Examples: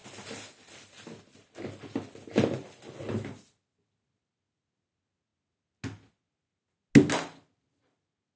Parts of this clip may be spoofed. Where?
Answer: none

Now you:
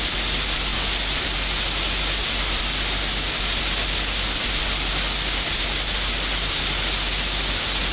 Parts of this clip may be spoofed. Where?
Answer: none

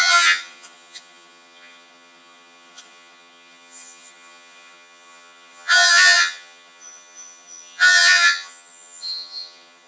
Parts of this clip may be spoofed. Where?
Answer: 0.0-9.9 (vocoder, HiFi-GAN)